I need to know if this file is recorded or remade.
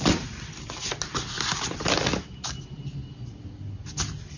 recorded